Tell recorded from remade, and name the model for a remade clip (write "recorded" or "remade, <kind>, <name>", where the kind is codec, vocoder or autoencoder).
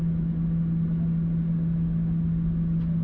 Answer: recorded